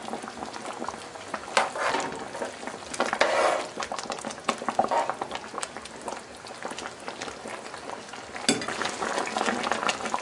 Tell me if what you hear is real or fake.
real